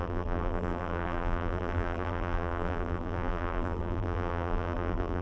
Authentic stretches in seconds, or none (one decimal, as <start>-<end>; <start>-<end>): none